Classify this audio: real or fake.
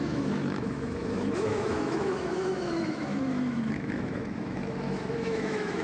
fake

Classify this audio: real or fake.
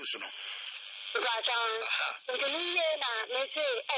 real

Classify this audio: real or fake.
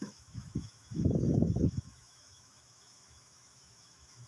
fake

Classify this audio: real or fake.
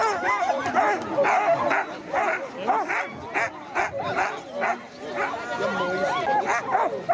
real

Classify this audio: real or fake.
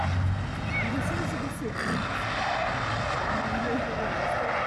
real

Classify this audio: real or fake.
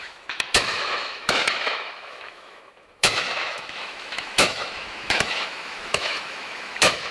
fake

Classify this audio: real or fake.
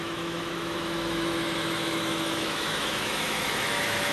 fake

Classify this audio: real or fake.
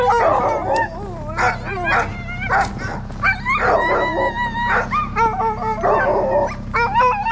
real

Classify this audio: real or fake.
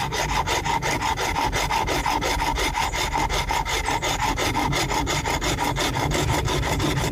real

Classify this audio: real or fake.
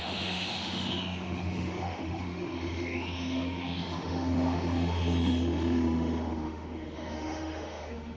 fake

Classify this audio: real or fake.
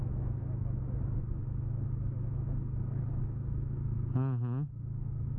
fake